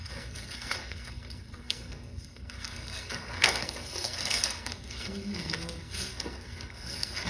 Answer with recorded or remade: remade